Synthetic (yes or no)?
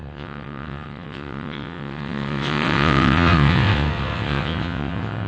yes